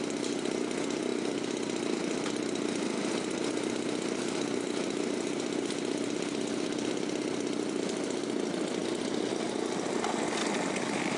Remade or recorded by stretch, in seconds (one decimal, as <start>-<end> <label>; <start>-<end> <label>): 0.0-11.2 recorded